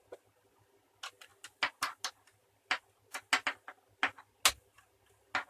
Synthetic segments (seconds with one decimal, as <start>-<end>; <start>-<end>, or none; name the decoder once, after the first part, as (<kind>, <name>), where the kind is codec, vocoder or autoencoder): none